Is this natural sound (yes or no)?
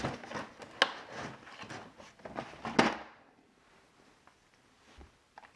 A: yes